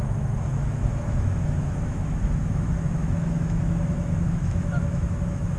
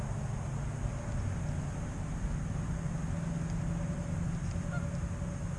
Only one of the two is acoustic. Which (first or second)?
second